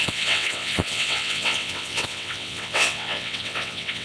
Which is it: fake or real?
fake